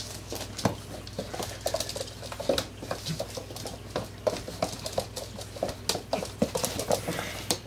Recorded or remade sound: recorded